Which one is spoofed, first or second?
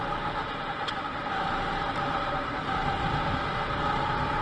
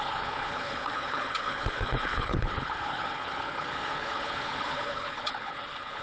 second